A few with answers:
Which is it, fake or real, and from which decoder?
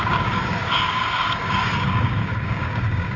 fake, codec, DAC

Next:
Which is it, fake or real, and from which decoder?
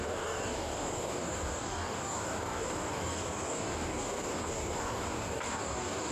fake, codec, DAC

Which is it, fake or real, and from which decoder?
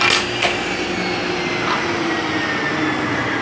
real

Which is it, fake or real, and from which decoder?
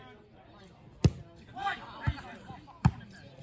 real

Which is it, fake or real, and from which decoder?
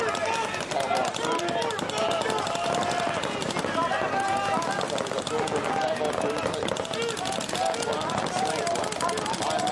real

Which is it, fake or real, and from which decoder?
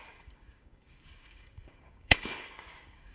fake, codec, DAC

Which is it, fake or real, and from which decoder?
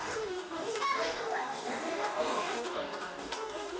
fake, codec, DAC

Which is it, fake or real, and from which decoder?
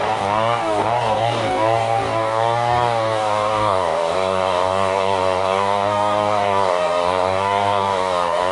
fake, codec, DAC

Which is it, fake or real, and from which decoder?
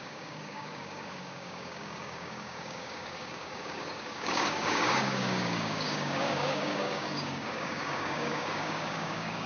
fake, codec, DAC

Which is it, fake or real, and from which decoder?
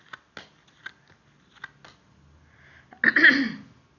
real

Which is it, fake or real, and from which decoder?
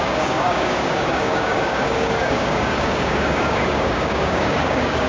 fake, codec, DAC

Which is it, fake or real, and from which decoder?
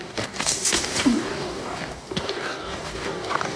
fake, codec, DAC